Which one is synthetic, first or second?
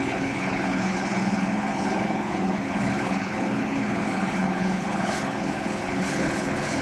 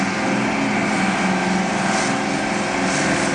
first